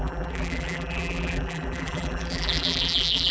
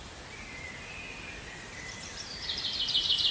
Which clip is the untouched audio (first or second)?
second